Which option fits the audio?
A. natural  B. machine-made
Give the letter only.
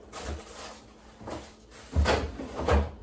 A